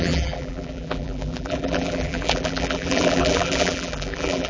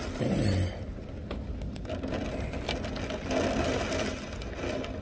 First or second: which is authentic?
second